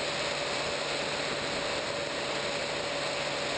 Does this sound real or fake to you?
real